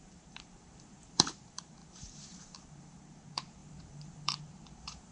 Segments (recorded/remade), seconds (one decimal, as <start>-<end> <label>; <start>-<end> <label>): 0.0-5.1 remade